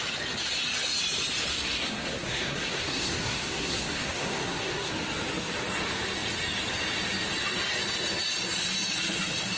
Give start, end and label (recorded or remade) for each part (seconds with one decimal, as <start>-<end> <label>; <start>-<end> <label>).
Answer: 0.0-1.5 recorded; 1.5-4.9 remade; 4.9-9.6 recorded